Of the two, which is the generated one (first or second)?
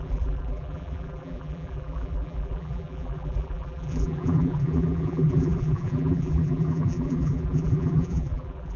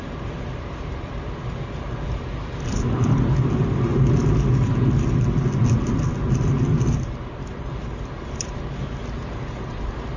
first